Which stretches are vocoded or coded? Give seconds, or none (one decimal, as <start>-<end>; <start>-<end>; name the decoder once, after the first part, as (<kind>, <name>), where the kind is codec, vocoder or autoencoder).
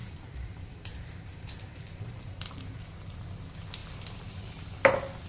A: 0.0-3.2 (vocoder, BigVGAN v2)